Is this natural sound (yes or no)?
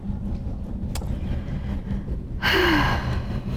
yes